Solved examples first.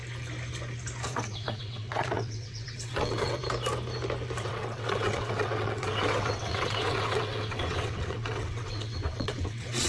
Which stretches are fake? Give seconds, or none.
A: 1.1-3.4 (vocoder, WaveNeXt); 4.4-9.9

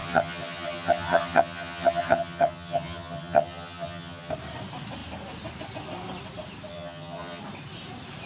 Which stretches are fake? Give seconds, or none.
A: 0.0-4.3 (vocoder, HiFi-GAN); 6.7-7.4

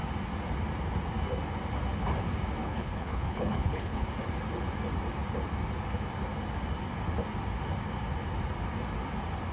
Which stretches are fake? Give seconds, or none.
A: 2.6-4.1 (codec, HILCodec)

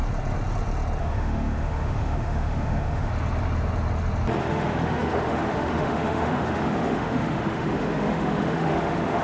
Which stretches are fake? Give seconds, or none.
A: 1.0-3.1 (autoencoder, DAC-VAE); 4.4-9.2

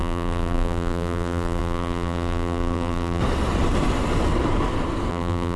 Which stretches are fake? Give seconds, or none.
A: 0.0-3.2 (vocoder, BigVGAN v2); 5.1-5.6

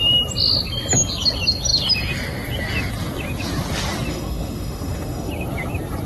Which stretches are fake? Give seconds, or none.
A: 4.1-5.3 (autoencoder, DAC-VAE)

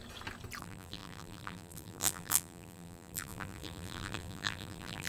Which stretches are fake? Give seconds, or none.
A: 0.6-5.1 (vocoder, BigVGAN v2)

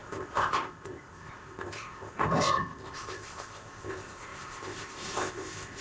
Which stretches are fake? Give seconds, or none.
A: 0.0-5.8 (codec, ZipCodec)